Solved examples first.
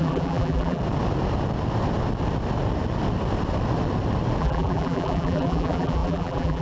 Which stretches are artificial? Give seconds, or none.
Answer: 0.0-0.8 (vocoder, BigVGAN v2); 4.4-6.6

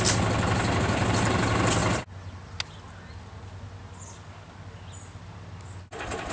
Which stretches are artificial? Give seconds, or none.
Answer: none

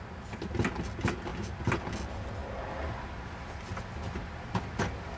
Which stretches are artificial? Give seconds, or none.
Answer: none

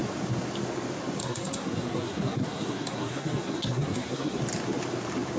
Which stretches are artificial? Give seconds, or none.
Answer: 1.2-4.4 (codec, SNAC)

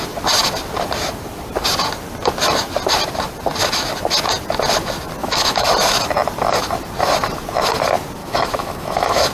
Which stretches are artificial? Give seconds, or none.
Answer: 5.2-5.7 (autoencoder, DAC-VAE); 8.2-9.3